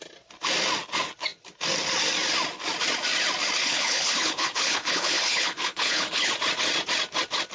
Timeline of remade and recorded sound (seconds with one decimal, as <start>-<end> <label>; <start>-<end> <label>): 0.0-3.6 recorded; 3.6-6.3 remade; 6.3-7.5 recorded